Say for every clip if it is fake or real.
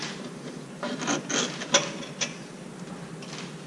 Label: real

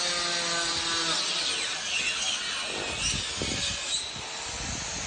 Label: real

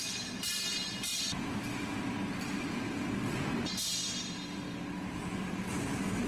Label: real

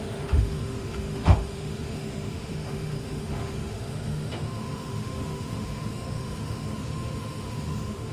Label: fake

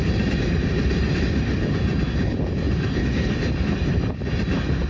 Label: real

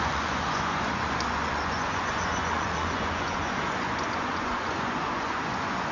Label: fake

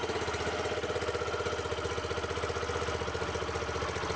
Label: real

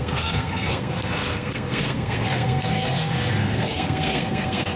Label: fake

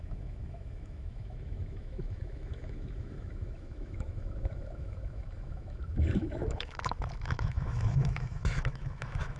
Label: fake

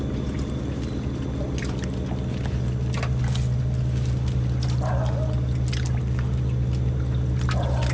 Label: real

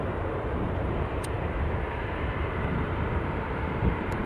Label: fake